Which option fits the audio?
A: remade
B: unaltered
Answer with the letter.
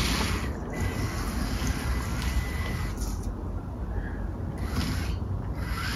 B